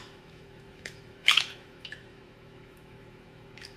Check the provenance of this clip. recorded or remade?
remade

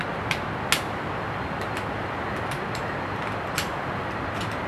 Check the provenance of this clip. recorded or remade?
recorded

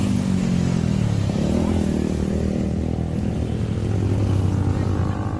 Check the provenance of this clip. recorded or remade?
recorded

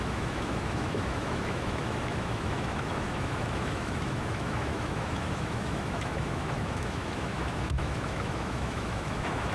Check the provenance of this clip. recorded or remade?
remade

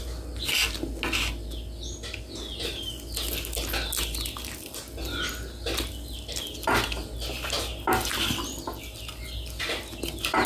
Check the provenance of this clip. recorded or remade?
recorded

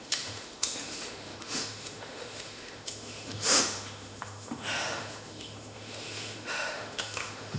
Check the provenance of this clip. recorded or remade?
remade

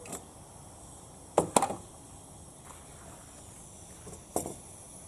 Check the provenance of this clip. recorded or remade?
recorded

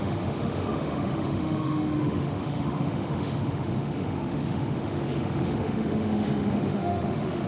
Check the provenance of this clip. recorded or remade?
remade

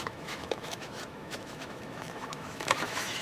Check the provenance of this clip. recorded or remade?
remade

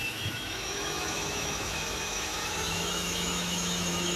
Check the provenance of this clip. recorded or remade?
remade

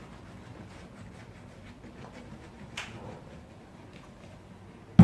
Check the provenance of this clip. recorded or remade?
recorded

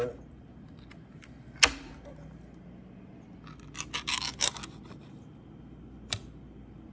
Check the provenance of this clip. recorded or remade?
recorded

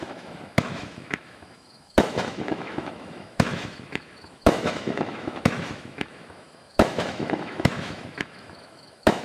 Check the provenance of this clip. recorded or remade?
remade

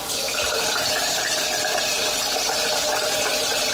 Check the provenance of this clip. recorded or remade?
recorded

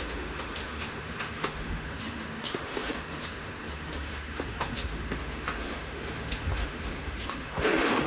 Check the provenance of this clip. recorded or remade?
remade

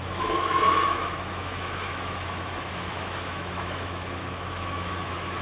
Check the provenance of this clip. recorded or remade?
remade